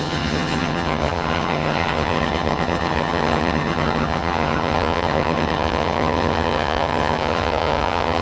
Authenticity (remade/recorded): remade